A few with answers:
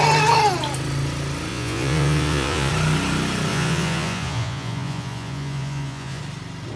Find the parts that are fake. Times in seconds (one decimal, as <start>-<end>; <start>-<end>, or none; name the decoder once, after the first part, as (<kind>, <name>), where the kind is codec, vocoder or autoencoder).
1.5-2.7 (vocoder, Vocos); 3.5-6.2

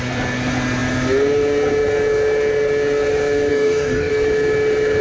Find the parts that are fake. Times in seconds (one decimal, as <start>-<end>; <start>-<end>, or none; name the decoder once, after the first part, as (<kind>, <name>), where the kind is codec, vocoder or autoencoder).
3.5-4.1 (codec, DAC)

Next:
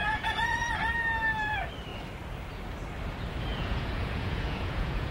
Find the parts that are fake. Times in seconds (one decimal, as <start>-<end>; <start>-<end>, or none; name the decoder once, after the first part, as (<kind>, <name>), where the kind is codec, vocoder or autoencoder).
0.0-0.7 (vocoder, Vocos); 3.5-5.1